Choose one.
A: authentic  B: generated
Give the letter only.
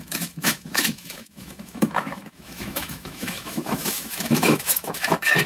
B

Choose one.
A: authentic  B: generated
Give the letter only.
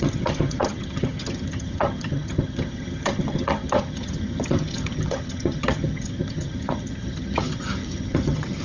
B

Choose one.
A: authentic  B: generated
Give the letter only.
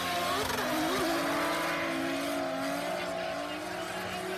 A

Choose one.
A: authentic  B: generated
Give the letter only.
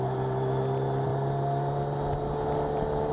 A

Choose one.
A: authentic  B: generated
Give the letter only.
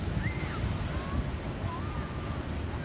A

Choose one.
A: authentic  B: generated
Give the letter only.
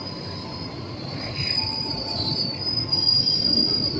A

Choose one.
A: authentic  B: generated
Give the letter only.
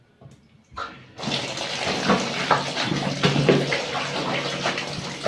A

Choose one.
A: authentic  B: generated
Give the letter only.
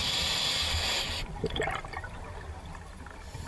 A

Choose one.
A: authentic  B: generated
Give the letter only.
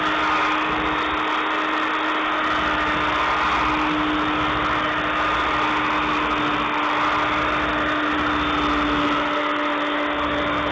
A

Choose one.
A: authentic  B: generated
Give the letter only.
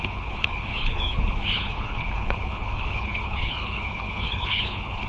B